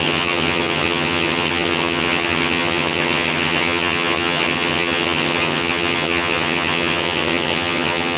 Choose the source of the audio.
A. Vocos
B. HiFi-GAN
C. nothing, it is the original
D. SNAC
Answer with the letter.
B